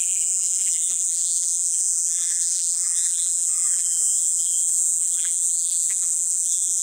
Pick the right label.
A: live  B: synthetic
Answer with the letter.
B